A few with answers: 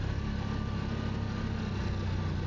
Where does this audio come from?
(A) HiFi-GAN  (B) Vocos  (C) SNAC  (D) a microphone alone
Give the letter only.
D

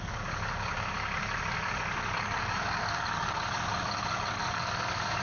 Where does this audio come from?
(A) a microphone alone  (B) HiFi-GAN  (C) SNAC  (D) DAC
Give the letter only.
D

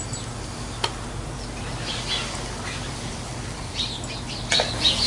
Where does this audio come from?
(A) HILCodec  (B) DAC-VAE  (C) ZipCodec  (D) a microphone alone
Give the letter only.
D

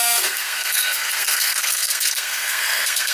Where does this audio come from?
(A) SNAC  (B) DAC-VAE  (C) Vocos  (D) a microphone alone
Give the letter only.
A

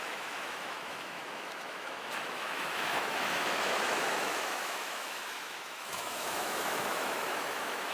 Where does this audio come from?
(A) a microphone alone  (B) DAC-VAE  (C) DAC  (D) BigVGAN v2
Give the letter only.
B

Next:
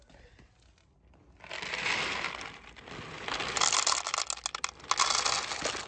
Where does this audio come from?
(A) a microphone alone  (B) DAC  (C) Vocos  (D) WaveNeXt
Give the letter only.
A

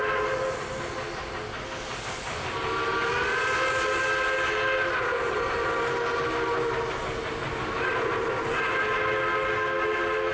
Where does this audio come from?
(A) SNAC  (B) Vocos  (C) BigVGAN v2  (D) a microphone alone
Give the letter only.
D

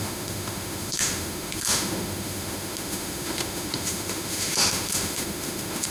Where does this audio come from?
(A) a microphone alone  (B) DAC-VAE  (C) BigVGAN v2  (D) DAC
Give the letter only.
B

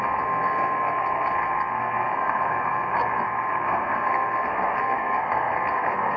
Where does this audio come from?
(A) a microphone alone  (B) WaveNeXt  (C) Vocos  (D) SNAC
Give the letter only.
D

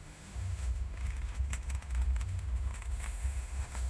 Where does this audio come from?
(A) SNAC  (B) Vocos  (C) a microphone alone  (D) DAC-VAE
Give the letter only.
D